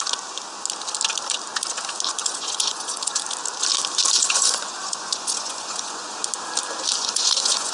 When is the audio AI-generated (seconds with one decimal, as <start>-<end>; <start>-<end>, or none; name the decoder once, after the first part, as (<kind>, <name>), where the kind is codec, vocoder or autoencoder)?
2.2-3.2 (vocoder, Vocos); 4.2-6.2; 7.0-7.7